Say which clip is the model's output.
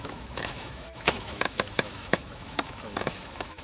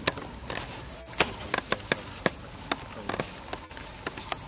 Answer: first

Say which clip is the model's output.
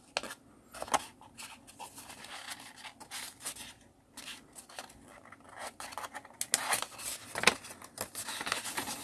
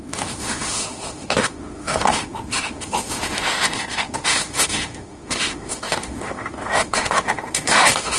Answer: second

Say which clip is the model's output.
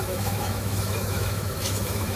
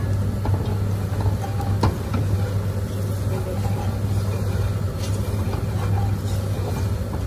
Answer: first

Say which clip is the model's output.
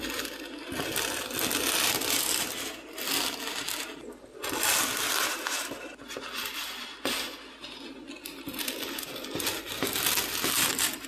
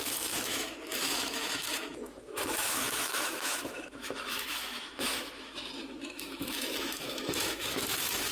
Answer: second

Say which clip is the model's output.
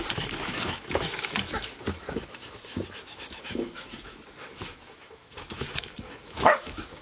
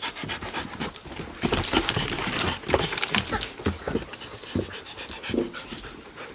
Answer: first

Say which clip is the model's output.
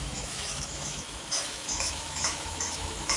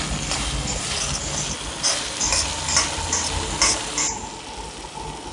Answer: first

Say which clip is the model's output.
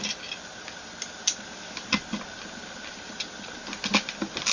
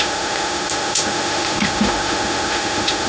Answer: second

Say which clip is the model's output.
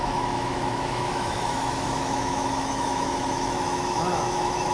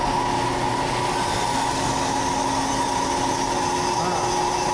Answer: first